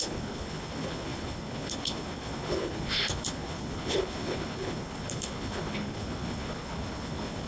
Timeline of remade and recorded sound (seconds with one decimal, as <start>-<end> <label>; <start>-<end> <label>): 0.0-7.5 remade